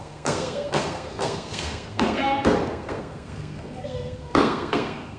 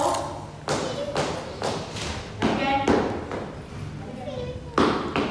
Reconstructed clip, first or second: first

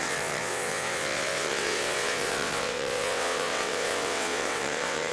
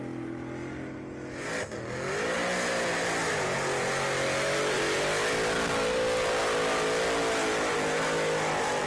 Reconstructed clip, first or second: first